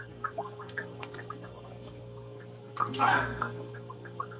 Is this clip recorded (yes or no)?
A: no